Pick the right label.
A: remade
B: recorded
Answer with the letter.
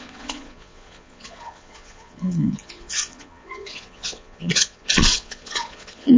A